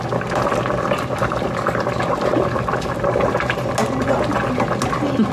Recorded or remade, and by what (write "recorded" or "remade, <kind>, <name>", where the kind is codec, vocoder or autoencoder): recorded